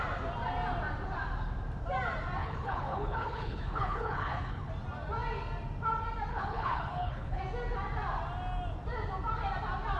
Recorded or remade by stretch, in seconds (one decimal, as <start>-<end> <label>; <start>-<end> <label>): 0.0-2.4 recorded; 2.4-4.7 remade; 4.7-6.3 recorded; 6.3-7.4 remade; 7.4-10.0 recorded